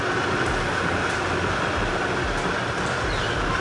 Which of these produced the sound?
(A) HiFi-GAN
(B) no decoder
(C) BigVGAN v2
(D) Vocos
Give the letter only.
B